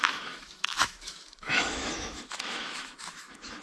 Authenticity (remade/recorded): remade